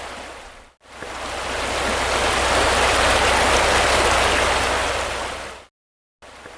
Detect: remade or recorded recorded